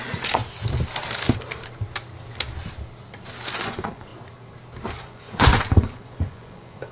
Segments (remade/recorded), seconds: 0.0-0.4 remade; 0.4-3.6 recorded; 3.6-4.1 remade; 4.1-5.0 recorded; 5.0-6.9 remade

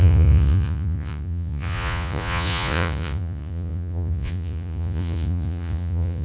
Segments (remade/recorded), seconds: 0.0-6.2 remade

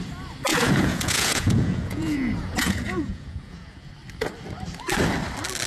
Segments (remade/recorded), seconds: 0.0-0.5 recorded; 0.5-3.9 remade; 3.9-5.7 recorded

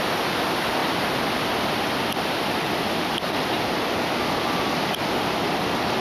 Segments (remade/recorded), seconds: 0.0-6.0 recorded

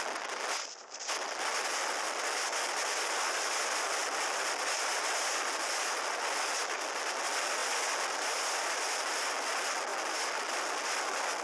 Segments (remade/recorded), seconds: 0.0-11.4 recorded